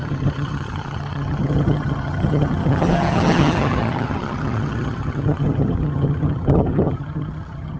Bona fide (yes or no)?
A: no